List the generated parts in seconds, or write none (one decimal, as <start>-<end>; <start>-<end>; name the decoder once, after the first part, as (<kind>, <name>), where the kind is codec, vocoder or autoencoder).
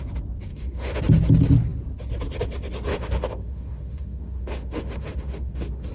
0.5-1.0 (autoencoder, DAC-VAE); 2.9-5.9